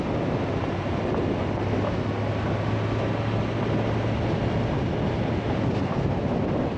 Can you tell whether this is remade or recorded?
recorded